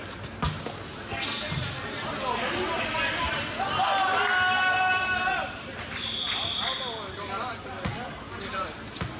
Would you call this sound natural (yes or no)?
yes